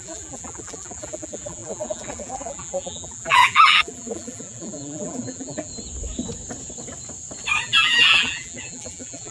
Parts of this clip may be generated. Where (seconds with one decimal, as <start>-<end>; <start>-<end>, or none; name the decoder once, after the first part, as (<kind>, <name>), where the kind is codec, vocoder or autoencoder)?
0.0-5.7 (vocoder, BigVGAN v2); 7.6-9.3